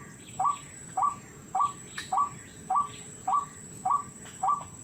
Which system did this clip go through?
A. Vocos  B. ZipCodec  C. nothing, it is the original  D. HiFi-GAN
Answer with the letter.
A